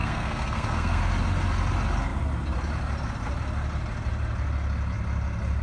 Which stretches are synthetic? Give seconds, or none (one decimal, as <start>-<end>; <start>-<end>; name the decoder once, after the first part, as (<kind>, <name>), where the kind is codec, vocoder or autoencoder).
0.0-1.0 (codec, SNAC)